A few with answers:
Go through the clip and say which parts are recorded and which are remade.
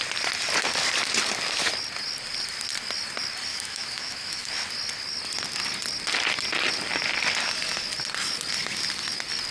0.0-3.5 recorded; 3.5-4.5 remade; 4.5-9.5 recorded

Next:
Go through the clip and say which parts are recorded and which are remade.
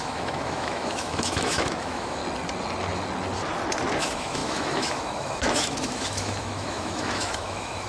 0.0-2.2 remade; 2.2-4.0 recorded; 4.0-7.9 remade